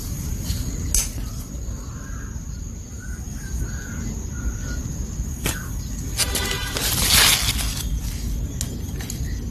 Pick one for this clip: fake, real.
real